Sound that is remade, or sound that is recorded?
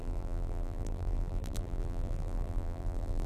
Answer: remade